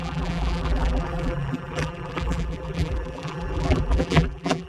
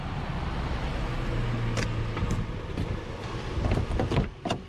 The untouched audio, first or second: second